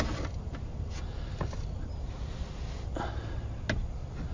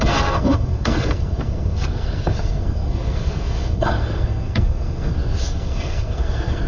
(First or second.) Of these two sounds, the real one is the first